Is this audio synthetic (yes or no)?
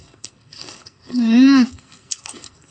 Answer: yes